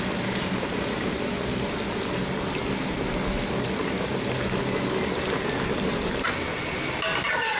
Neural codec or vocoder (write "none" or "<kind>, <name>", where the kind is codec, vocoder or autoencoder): none